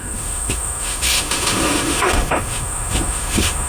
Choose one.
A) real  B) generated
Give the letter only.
B